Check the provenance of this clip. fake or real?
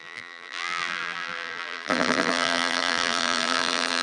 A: fake